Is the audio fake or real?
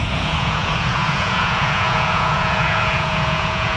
fake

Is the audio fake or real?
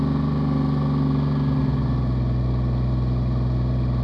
real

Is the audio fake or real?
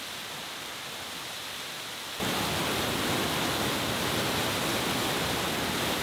real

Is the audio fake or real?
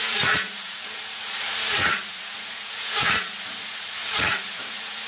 fake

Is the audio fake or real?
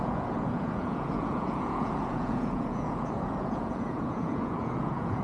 fake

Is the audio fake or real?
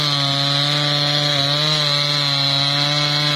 real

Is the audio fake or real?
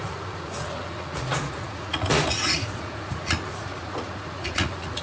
fake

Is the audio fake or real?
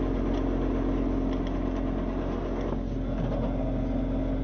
real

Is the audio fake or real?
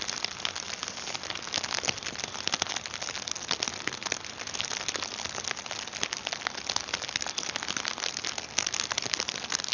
real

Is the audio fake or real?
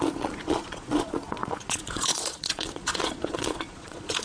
fake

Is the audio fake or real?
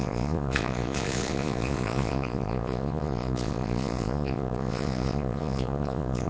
fake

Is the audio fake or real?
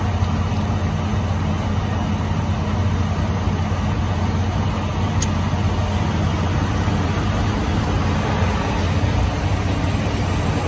real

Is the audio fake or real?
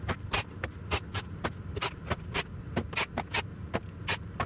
real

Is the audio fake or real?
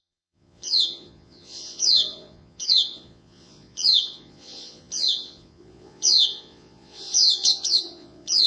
fake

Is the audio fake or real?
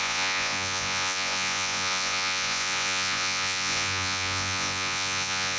fake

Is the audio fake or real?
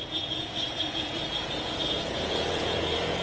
fake